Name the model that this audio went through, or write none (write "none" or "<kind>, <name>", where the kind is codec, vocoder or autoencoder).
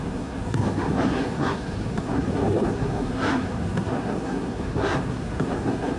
codec, SNAC